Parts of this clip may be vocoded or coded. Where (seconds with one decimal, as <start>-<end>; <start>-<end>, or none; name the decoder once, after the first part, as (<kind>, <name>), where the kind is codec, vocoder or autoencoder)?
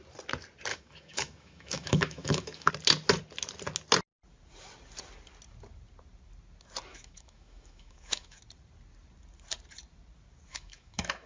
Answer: 0.7-2.7 (autoencoder, DAC-VAE); 6.9-8.4; 10.5-11.3